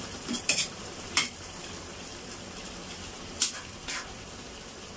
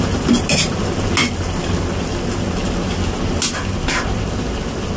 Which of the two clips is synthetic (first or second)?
first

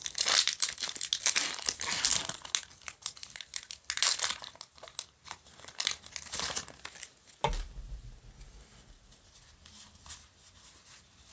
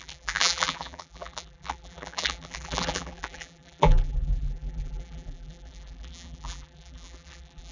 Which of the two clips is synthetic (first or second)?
second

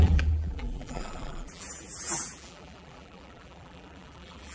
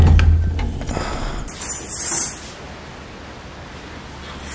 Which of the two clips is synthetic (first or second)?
first